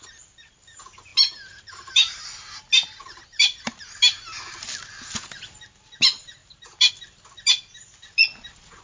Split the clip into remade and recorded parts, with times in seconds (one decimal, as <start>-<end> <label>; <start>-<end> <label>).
0.0-8.8 recorded